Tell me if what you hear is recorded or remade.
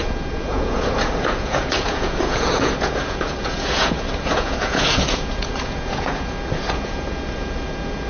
remade